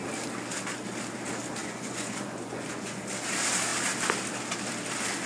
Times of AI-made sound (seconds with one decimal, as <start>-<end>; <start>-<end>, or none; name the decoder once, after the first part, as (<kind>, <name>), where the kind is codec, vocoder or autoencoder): 1.6-3.0 (vocoder, Vocos)